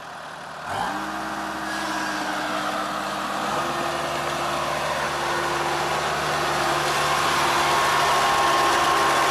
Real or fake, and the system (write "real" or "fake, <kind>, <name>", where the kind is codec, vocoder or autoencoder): real